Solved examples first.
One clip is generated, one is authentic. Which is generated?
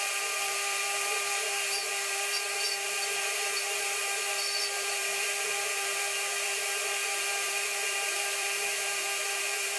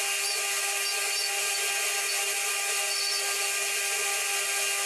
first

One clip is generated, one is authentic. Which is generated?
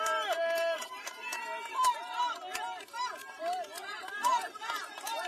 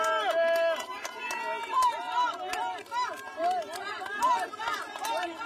first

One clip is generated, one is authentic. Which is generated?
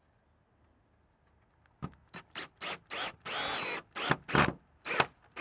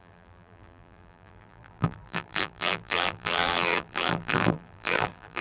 second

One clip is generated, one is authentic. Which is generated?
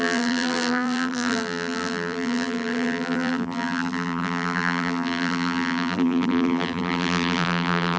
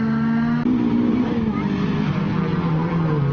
first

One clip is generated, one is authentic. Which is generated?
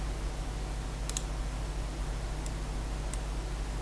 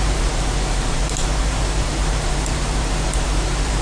second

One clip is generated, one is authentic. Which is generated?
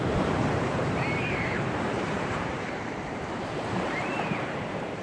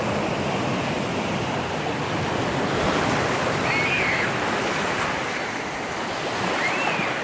first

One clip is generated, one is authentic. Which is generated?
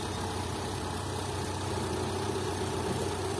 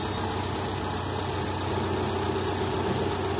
first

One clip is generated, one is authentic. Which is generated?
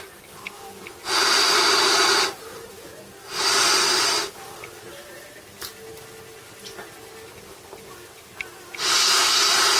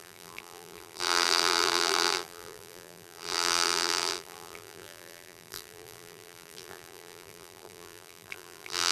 second